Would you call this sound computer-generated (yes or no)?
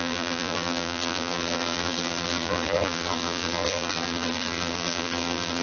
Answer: yes